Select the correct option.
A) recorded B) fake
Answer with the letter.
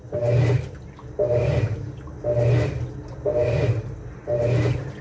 A